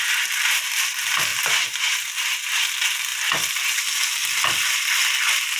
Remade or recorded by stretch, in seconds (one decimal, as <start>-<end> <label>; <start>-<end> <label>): 0.0-1.3 recorded; 1.3-1.9 remade; 1.9-3.1 recorded; 3.1-3.8 remade; 3.8-4.2 recorded; 4.2-4.8 remade; 4.8-5.6 recorded

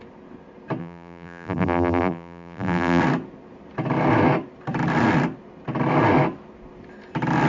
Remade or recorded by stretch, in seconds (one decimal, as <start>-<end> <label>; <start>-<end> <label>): 0.0-0.8 recorded; 0.8-3.0 remade; 3.0-7.5 recorded

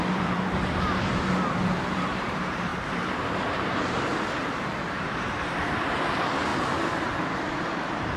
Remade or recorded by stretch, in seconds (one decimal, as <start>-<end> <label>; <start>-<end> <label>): 0.0-8.2 remade